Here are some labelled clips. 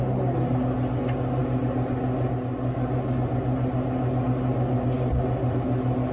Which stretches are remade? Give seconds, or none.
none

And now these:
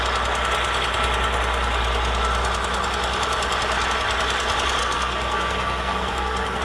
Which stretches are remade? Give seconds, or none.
4.8-6.6 (codec, SNAC)

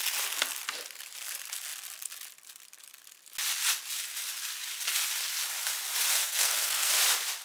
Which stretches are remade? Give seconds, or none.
6.1-7.0 (codec, SNAC)

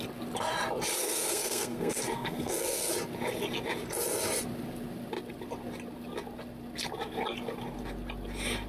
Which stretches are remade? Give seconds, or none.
1.0-2.9 (codec, SNAC)

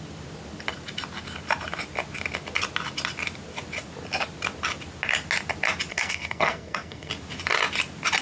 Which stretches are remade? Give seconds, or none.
5.9-7.1 (codec, SNAC)

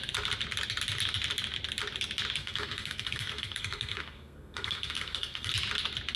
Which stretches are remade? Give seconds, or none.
2.4-5.5 (codec, SNAC)